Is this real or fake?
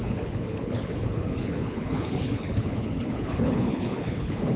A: fake